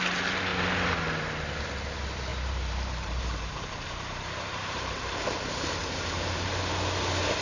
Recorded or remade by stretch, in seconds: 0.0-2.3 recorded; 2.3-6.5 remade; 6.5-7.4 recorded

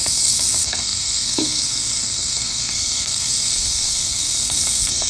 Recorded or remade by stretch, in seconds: 0.0-5.1 remade

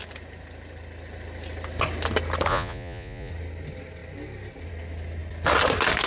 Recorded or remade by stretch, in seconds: 0.0-2.5 recorded; 2.5-3.3 remade; 3.3-6.1 recorded

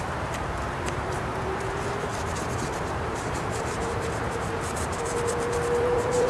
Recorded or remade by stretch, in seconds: 0.0-2.1 remade; 2.1-3.2 recorded; 3.2-6.3 remade

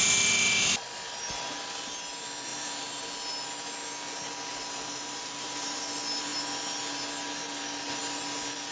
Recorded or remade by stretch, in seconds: 0.0-2.5 recorded; 2.5-3.0 remade; 3.0-4.6 recorded; 4.6-5.8 remade; 5.8-8.7 recorded

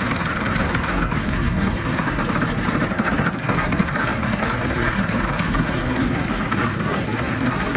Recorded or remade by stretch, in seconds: 0.0-2.2 remade; 2.2-2.9 recorded; 2.9-7.8 remade

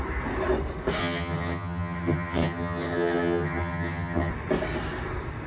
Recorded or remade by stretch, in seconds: 0.0-1.0 recorded; 1.0-4.3 remade; 4.3-5.5 recorded

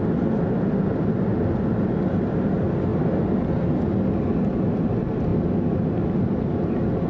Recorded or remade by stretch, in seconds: 0.0-7.1 recorded